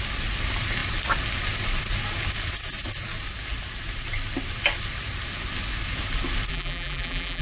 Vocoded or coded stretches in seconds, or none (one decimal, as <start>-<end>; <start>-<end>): 6.5-7.4